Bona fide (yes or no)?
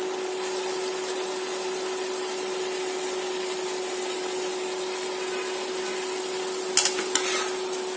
yes